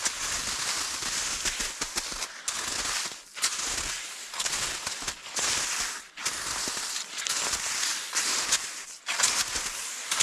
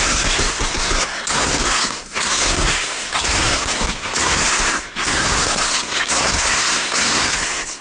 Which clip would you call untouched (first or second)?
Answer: first